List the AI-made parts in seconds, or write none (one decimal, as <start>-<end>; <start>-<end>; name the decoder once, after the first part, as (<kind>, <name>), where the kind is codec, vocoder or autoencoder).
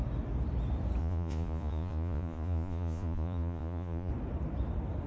1.0-4.1 (vocoder, Vocos)